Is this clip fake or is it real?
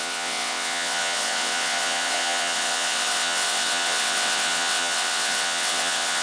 fake